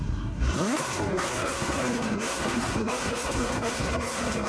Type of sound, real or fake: fake